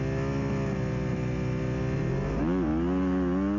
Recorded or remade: recorded